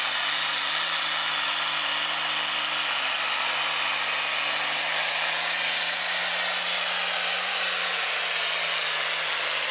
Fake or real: real